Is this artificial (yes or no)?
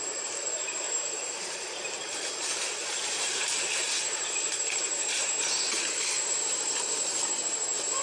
yes